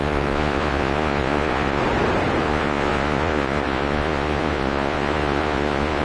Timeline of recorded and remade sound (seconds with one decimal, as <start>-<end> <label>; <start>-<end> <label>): 0.0-1.8 remade; 1.8-2.4 recorded; 2.4-6.0 remade